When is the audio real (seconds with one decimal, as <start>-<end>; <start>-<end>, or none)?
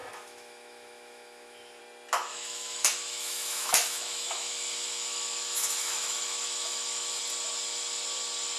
1.8-2.3; 7.2-8.6